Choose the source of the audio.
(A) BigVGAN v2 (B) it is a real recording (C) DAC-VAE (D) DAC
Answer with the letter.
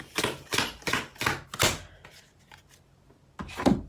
B